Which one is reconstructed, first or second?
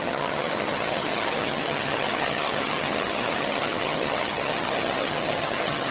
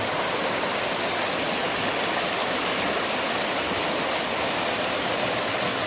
first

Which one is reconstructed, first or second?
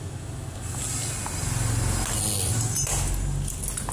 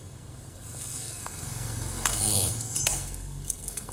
second